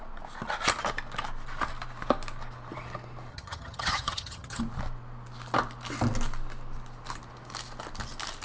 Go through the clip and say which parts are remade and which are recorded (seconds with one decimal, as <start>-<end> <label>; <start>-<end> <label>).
0.0-3.3 recorded; 3.3-4.6 remade; 4.6-8.4 recorded